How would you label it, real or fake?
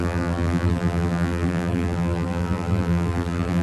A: fake